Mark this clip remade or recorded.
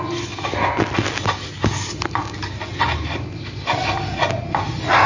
recorded